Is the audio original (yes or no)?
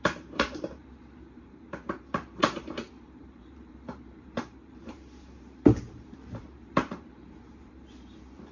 no